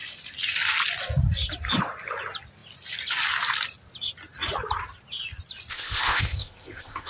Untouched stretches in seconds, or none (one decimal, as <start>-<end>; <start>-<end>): 0.0-5.7